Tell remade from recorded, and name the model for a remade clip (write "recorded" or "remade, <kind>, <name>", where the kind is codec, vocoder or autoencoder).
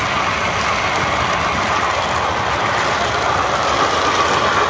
recorded